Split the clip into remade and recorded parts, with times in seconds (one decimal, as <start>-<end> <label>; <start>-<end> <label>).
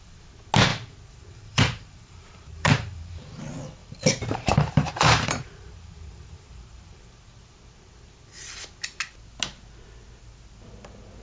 0.0-0.7 recorded; 0.7-3.4 remade; 3.4-3.8 recorded; 3.8-7.0 remade; 7.0-11.2 recorded